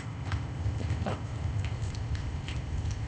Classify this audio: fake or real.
fake